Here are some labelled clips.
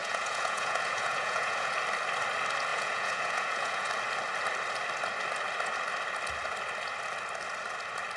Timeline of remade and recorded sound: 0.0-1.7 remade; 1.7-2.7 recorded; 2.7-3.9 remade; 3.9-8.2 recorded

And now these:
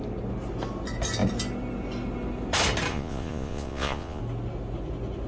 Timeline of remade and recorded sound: 0.0-2.9 recorded; 2.9-4.2 remade; 4.2-5.3 recorded

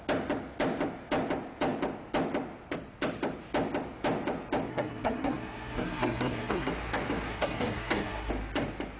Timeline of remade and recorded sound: 0.0-4.7 recorded; 4.7-6.7 remade; 6.7-7.3 recorded; 7.3-8.3 remade; 8.3-9.0 recorded

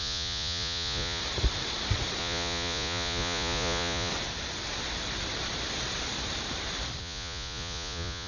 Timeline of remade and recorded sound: 0.0-1.2 remade; 1.2-2.2 recorded; 2.2-4.1 remade; 4.1-7.0 recorded; 7.0-8.3 remade

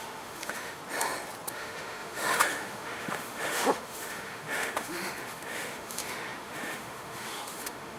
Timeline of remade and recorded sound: 0.0-0.8 remade; 0.8-1.5 recorded; 1.5-8.0 remade

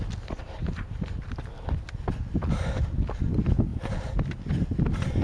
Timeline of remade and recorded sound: 0.0-5.2 recorded

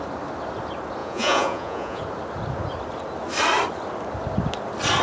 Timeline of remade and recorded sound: 0.0-1.0 recorded; 1.0-2.0 remade; 2.0-5.0 recorded

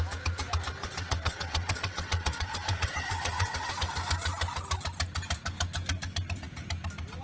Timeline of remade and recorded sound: 0.0-0.8 recorded; 0.8-3.7 remade; 3.7-7.2 recorded